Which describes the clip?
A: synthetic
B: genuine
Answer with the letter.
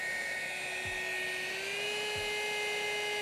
B